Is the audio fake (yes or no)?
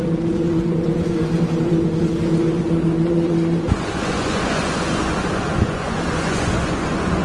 yes